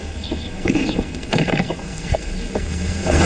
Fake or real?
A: fake